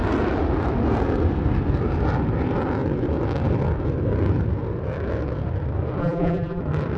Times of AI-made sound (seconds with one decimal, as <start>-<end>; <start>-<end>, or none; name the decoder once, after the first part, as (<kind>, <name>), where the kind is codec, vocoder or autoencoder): 6.0-6.6 (vocoder, BigVGAN v2)